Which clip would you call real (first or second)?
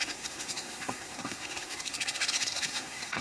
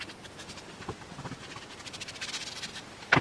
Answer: second